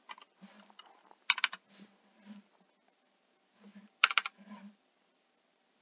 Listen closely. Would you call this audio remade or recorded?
recorded